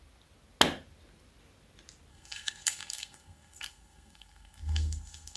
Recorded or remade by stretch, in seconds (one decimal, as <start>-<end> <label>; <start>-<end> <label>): 0.0-2.1 recorded; 2.1-5.4 remade